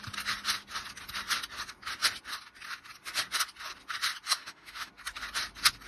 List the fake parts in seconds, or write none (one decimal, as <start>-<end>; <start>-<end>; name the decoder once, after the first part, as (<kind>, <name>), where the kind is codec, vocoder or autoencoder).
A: 4.3-4.9 (autoencoder, DAC-VAE)